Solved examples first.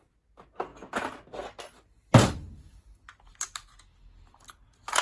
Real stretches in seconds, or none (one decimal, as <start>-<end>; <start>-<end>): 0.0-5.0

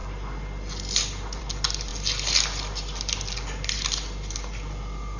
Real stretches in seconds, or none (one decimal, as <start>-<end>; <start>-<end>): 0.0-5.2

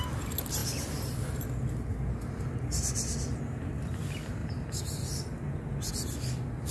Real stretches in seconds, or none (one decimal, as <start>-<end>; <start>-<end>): 0.0-6.7

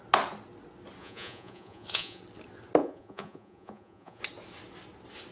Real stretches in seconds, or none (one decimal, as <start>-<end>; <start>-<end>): 0.0-1.0; 2.2-2.8; 4.2-5.3